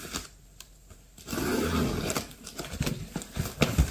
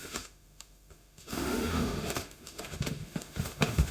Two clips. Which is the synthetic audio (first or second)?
second